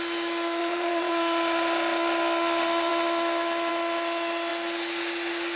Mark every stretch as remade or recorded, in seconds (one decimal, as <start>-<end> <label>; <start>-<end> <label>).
0.0-0.6 recorded; 0.6-1.1 remade; 1.1-5.6 recorded